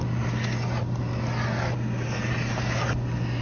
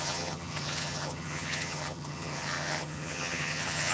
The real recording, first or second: first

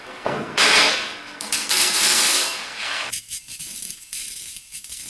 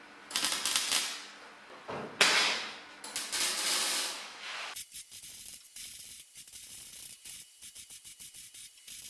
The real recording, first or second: second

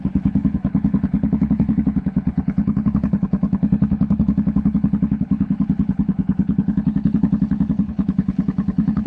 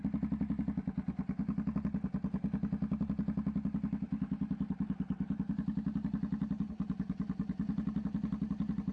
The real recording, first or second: second